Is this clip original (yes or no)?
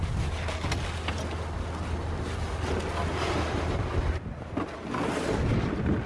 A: yes